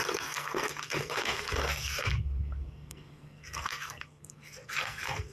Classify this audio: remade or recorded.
remade